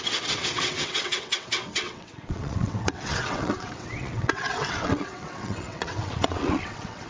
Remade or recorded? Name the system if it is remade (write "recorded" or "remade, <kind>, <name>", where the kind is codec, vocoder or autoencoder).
remade, vocoder, WaveNeXt